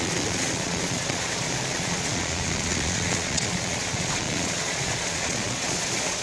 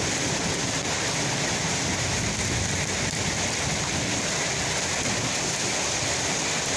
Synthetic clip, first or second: first